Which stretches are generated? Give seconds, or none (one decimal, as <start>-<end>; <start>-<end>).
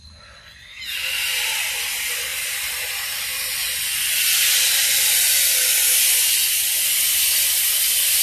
2.3-2.9; 5.3-5.8